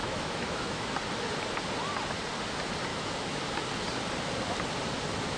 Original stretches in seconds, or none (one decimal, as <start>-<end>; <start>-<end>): 0.9-2.9; 3.4-5.4